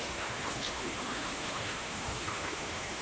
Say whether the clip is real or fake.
fake